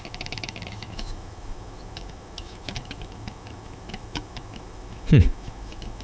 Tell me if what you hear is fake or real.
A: fake